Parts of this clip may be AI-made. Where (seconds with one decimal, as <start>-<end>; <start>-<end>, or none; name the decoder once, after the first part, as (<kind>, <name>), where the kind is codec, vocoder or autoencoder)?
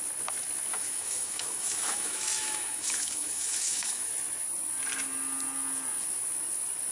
0.7-4.1 (autoencoder, DAC-VAE)